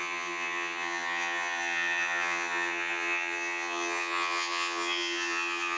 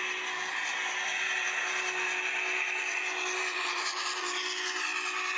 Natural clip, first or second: second